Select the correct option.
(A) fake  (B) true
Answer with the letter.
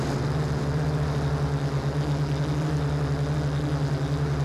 B